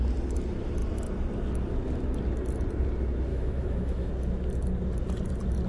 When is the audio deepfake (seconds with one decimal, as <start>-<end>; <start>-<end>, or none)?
3.3-4.1